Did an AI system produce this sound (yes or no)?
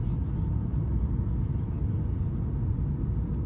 no